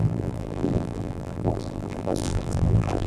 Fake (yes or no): yes